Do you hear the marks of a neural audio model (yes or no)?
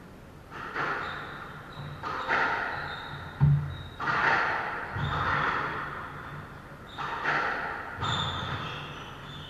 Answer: no